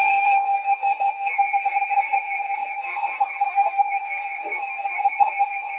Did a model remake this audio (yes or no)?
yes